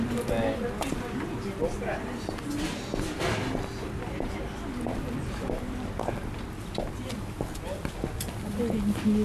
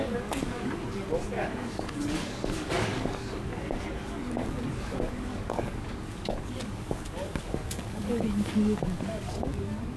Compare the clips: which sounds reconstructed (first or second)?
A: second